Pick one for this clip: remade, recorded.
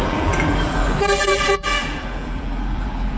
remade